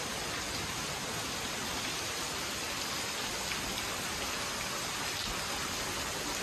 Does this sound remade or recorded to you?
recorded